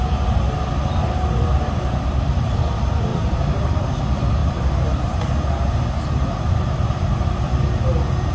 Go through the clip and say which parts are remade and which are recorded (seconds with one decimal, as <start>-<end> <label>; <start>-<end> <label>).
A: 0.0-3.1 recorded; 3.1-4.0 remade; 4.0-4.4 recorded; 4.4-7.5 remade; 7.5-8.3 recorded